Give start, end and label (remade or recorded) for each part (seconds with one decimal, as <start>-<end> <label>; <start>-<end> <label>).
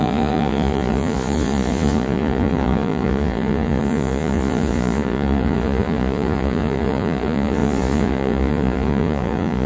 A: 0.0-9.7 remade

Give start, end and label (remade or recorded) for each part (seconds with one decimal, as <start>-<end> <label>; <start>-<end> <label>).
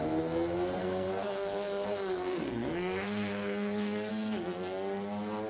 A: 0.0-0.8 recorded; 0.8-4.1 remade; 4.1-5.5 recorded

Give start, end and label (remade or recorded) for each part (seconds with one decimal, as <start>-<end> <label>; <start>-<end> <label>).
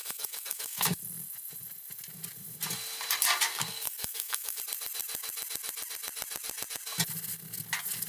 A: 0.0-1.0 remade; 1.0-3.5 recorded; 3.5-4.6 remade; 4.6-8.1 recorded